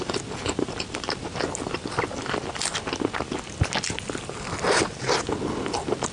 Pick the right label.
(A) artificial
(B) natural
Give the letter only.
B